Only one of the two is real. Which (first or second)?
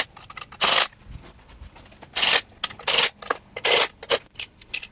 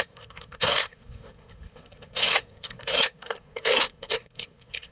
first